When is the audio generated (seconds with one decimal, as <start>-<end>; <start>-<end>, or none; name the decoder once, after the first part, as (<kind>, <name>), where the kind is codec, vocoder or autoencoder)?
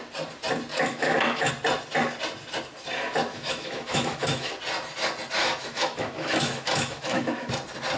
0.7-1.5 (autoencoder, DAC-VAE); 3.3-4.5; 5.4-7.5